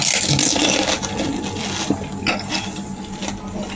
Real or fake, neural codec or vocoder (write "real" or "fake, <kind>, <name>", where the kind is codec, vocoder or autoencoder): real